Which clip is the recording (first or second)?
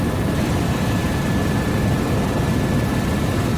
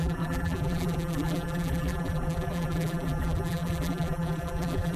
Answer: first